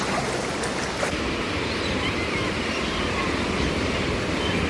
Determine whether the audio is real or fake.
real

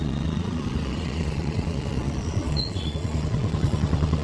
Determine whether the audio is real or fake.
fake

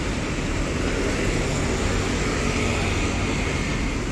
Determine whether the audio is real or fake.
real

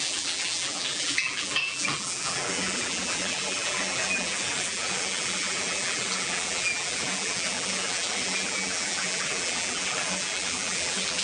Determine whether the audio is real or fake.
fake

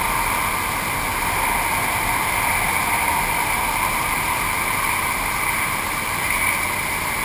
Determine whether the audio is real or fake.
real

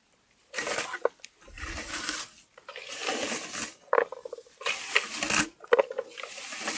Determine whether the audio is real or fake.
real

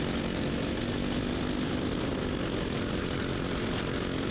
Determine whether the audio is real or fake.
real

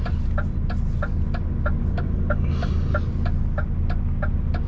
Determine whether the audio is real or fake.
real